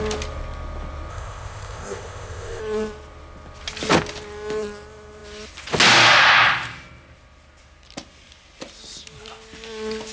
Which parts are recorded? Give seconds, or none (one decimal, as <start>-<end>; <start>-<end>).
0.0-1.1; 2.6-10.1